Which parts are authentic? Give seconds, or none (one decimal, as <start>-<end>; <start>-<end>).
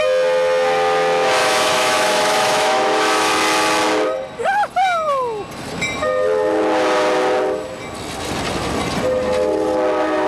0.0-1.4; 3.3-10.3